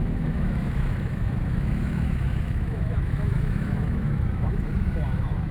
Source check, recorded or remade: remade